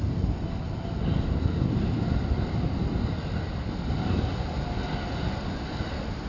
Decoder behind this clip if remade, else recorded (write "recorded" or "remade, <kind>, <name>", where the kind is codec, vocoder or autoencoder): recorded